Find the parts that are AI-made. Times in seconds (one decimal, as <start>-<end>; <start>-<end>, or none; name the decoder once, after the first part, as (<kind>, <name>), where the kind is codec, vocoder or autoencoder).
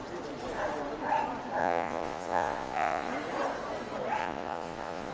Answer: 1.6-3.1 (vocoder, Vocos); 4.2-5.1